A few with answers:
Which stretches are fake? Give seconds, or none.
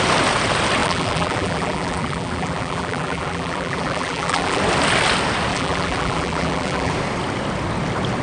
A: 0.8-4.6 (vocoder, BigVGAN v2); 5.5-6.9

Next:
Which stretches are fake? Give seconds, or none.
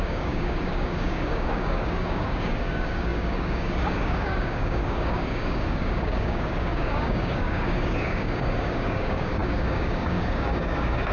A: 0.0-11.1 (codec, DAC)